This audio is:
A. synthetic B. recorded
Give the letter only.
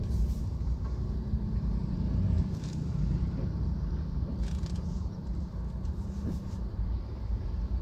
A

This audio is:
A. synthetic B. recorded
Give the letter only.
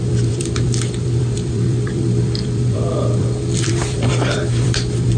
A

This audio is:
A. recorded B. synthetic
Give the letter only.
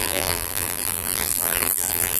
B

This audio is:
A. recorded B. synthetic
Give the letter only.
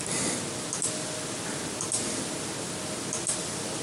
A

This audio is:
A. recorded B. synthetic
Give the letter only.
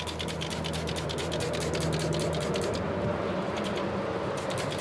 A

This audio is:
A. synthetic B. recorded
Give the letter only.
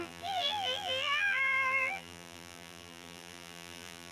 A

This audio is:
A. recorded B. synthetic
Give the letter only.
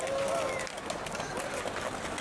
A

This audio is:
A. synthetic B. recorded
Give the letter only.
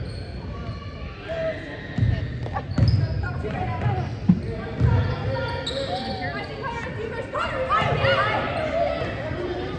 B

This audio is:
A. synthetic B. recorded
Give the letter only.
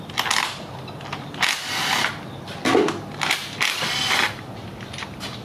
B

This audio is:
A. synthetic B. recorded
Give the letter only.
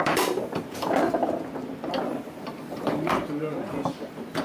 A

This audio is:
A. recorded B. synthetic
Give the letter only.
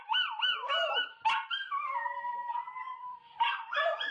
B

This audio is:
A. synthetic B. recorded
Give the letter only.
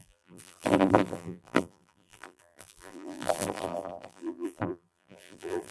A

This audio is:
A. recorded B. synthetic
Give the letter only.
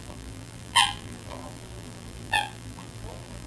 B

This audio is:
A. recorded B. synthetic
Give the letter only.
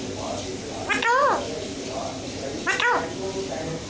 A